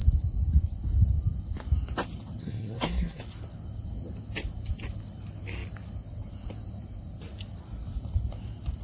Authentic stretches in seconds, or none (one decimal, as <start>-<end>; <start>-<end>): 0.0-2.4; 3.2-8.8